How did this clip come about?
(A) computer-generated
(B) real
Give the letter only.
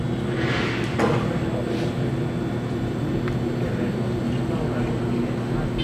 B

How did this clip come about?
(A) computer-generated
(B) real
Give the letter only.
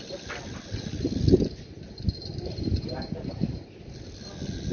B